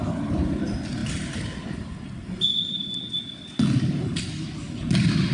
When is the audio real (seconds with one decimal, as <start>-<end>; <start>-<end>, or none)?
0.0-5.3